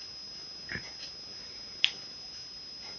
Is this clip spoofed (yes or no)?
no